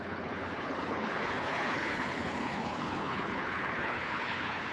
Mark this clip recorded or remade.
remade